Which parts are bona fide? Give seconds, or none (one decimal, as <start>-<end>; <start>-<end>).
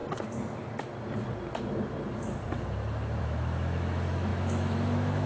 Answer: 0.0-3.2